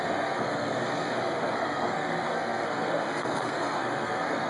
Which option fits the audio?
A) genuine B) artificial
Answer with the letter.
B